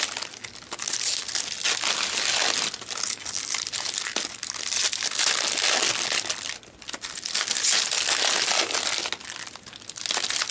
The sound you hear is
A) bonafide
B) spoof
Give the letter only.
A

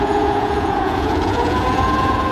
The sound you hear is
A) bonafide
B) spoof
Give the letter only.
B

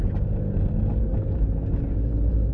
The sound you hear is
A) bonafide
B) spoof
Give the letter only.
A